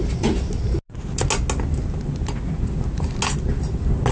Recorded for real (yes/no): yes